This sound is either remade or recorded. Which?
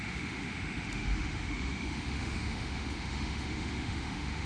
remade